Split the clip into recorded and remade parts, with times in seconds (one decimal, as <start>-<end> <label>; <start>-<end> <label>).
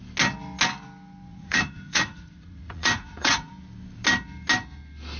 0.0-1.3 recorded; 1.3-3.5 remade; 3.5-5.2 recorded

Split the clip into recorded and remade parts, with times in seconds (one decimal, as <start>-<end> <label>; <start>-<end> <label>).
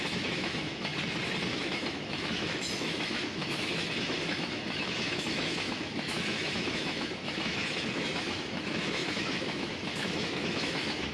0.0-0.9 remade; 0.9-1.5 recorded; 1.5-11.1 remade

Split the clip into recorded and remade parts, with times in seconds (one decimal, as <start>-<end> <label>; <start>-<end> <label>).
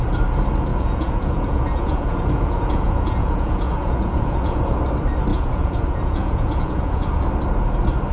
0.0-0.7 recorded; 0.7-4.8 remade; 4.8-5.3 recorded; 5.3-7.2 remade; 7.2-8.1 recorded